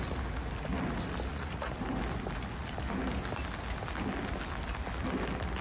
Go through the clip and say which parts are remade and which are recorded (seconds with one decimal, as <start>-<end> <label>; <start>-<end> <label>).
0.0-1.3 recorded; 1.3-1.8 remade; 1.8-5.6 recorded